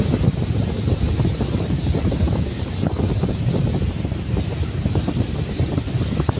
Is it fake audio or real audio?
fake